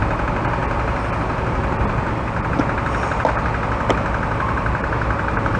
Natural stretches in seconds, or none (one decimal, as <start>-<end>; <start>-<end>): 0.0-5.6

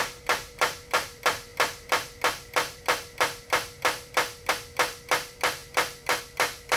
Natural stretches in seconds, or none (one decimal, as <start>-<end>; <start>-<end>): none

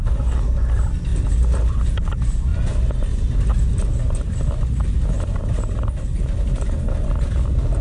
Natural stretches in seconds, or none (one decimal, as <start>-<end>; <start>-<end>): 0.0-7.8

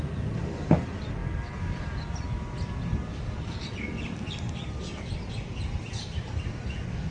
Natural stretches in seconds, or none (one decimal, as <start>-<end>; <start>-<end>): 0.0-7.1

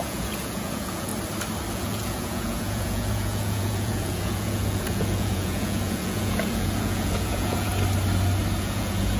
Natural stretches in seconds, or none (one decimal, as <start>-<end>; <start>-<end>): 1.1-1.7; 7.7-8.6

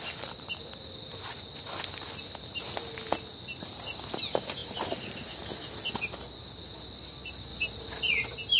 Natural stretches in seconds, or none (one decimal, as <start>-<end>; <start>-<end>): 0.0-8.6

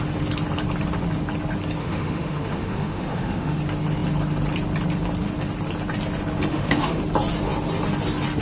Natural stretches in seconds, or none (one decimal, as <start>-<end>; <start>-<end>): 0.0-1.8; 3.6-6.5; 7.0-8.4